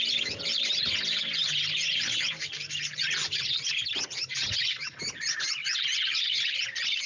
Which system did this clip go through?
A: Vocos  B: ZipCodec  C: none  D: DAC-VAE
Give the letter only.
C